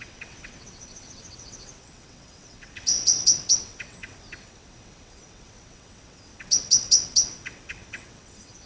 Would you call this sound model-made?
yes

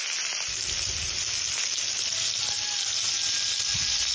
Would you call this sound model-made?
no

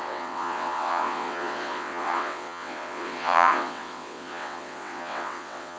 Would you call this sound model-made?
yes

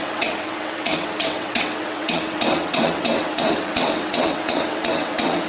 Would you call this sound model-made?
yes